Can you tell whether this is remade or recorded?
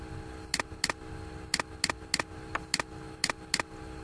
recorded